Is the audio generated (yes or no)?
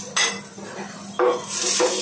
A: no